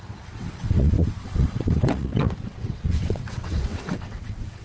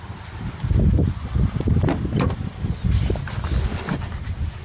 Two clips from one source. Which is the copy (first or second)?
first